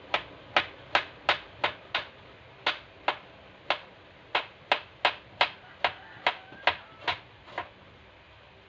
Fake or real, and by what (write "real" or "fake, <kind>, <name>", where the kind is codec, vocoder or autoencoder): real